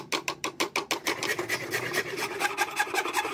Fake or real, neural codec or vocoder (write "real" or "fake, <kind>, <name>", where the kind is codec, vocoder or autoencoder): real